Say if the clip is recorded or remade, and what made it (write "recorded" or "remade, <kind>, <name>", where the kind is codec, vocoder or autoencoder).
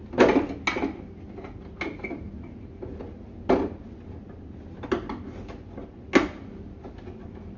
recorded